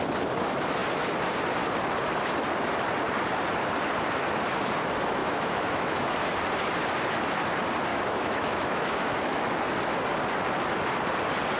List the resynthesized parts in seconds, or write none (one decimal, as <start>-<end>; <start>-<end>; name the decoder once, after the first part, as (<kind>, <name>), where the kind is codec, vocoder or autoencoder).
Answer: 5.2-6.4 (autoencoder, DAC-VAE); 7.9-9.4